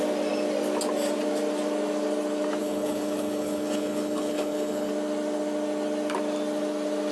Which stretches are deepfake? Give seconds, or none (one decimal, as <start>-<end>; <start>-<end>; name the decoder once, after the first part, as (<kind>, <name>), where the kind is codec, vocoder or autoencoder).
2.6-4.9 (codec, HILCodec)